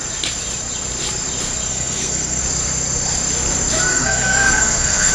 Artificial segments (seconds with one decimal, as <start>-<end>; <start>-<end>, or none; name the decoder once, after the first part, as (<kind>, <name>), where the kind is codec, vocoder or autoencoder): 1.7-2.4 (codec, SNAC); 3.9-5.1